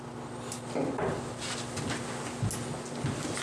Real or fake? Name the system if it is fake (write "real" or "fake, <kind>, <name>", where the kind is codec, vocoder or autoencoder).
real